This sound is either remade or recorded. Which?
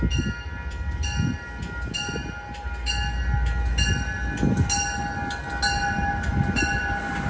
recorded